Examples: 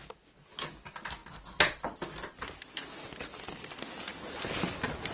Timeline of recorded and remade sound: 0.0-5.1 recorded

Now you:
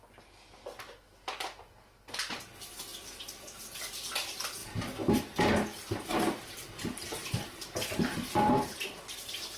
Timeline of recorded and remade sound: 0.0-2.9 recorded; 2.9-3.9 remade; 3.9-4.6 recorded; 4.6-5.4 remade; 5.4-7.2 recorded; 7.2-8.8 remade; 8.8-9.6 recorded

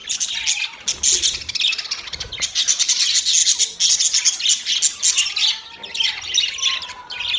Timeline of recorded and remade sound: 0.0-7.4 recorded

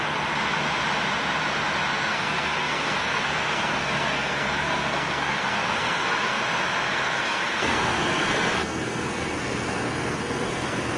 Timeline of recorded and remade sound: 0.0-1.9 recorded; 1.9-6.4 remade; 6.4-6.9 recorded; 6.9-11.0 remade

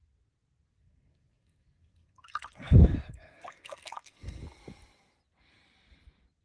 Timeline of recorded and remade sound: 0.0-0.8 recorded; 0.8-4.4 remade; 4.4-6.4 recorded